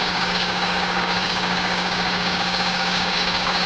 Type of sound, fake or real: fake